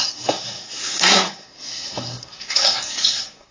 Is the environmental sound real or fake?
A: fake